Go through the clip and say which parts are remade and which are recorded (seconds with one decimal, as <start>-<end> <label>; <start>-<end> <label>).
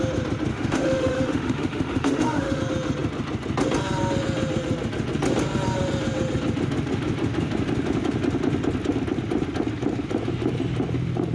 0.0-0.5 recorded; 0.5-2.6 remade; 2.6-11.3 recorded